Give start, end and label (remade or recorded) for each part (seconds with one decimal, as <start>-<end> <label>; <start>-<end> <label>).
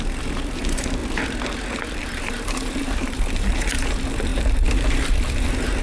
0.0-1.0 remade; 1.0-2.0 recorded; 2.0-5.8 remade